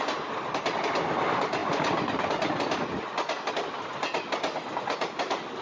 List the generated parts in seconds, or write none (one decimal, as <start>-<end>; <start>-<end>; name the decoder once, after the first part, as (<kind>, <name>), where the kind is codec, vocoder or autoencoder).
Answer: none